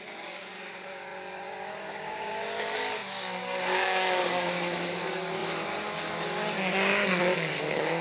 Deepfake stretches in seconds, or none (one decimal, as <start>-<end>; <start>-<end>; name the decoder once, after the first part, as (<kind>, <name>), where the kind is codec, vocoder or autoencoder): 0.0-8.0 (codec, DAC)